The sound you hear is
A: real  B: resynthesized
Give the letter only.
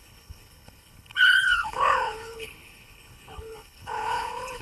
B